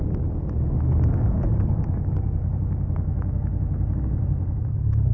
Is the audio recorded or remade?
recorded